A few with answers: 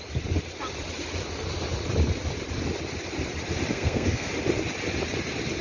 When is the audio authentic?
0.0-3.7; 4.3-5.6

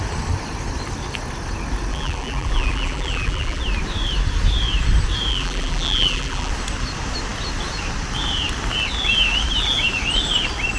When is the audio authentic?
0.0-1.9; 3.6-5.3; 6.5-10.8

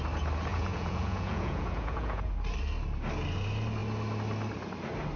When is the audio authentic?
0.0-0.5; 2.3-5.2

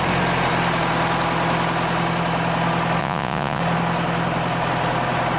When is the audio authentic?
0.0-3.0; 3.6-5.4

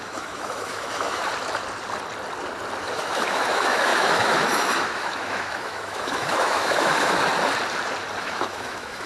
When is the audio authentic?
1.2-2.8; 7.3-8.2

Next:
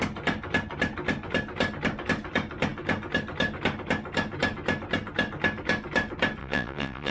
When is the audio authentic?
0.0-6.4

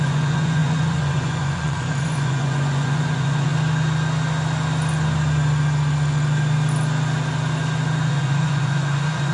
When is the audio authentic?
3.5-8.1